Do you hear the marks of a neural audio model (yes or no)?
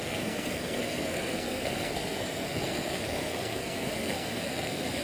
yes